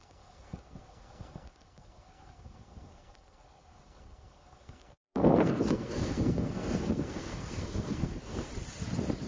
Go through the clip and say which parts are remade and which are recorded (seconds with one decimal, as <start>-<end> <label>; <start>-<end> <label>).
0.0-8.5 remade; 8.5-9.3 recorded